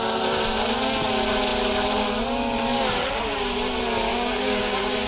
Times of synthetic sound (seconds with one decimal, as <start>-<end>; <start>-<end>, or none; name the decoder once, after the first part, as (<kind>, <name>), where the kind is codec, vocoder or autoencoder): 4.1-5.1 (codec, DAC)